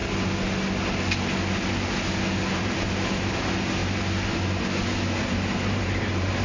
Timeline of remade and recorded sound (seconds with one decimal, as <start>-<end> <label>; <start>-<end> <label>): 0.0-2.6 recorded; 2.6-3.8 remade; 3.8-5.3 recorded; 5.3-6.4 remade